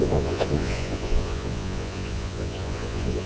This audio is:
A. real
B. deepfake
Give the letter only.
B